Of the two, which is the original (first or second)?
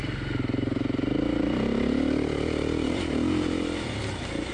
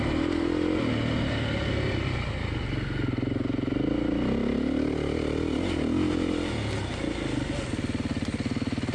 second